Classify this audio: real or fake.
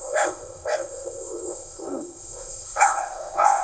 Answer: fake